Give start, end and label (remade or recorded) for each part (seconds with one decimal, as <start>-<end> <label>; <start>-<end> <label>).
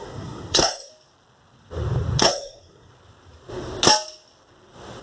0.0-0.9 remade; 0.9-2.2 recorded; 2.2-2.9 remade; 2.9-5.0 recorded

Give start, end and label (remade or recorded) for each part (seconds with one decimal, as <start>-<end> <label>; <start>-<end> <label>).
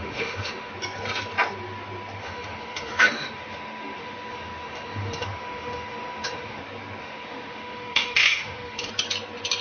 0.0-0.7 remade; 0.7-2.2 recorded; 2.2-6.6 remade; 6.6-7.0 recorded; 7.0-8.9 remade; 8.9-9.6 recorded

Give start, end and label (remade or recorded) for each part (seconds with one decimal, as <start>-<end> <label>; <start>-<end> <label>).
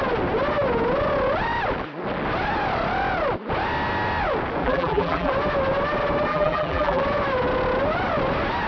0.0-4.6 recorded; 4.6-5.3 remade; 5.3-6.3 recorded; 6.3-7.0 remade; 7.0-8.7 recorded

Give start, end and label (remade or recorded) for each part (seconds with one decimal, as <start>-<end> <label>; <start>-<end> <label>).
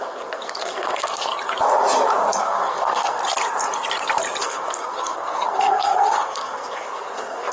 0.0-1.3 remade; 1.3-2.4 recorded; 2.4-3.2 remade; 3.2-4.4 recorded; 4.4-7.5 remade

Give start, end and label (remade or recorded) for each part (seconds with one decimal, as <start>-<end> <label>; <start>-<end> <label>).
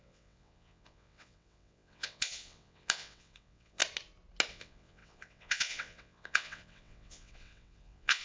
0.0-3.8 remade; 3.8-4.5 recorded; 4.5-8.2 remade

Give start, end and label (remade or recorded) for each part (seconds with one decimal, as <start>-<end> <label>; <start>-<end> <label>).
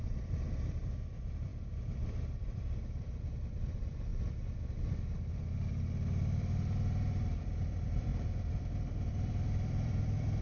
0.0-8.1 remade; 8.1-9.1 recorded; 9.1-10.4 remade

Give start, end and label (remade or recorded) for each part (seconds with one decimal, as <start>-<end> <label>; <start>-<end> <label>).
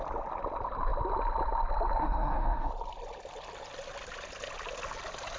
0.0-2.0 recorded; 2.0-2.7 remade; 2.7-5.4 recorded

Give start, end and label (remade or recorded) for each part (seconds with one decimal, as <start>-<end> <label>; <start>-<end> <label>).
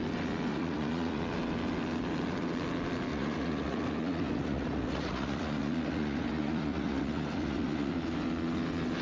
0.0-0.5 recorded; 0.5-1.2 remade; 1.2-3.1 recorded; 3.1-7.9 remade; 7.9-9.0 recorded